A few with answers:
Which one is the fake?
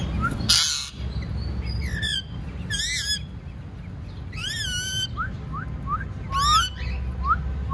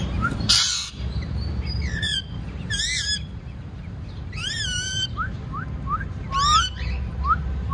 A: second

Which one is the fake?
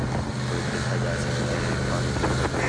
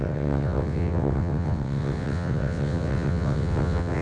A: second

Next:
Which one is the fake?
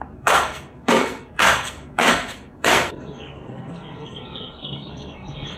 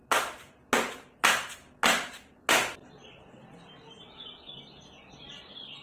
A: first